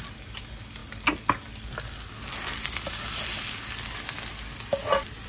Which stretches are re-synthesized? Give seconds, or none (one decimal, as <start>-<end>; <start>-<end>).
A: none